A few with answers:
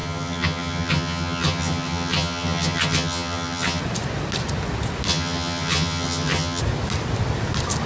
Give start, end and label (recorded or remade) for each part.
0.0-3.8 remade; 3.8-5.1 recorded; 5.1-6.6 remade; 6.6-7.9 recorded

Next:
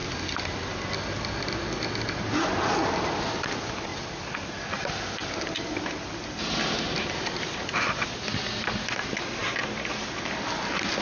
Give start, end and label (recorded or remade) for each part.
0.0-11.0 recorded

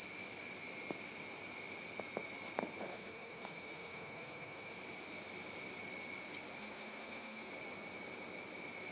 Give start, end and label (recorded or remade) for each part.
0.0-2.9 recorded; 2.9-4.7 remade; 4.7-6.6 recorded; 6.6-7.5 remade; 7.5-8.9 recorded

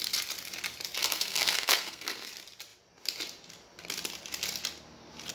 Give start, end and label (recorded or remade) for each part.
0.0-1.0 recorded; 1.0-2.3 remade; 2.3-5.3 recorded

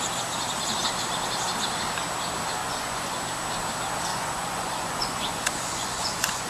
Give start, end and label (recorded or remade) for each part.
0.0-2.6 recorded; 2.6-3.2 remade; 3.2-4.1 recorded; 4.1-6.5 remade